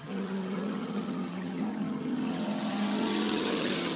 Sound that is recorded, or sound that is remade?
remade